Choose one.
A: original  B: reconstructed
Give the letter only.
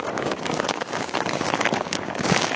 B